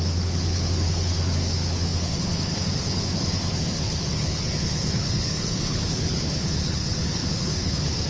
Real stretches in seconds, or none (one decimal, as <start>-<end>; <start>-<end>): none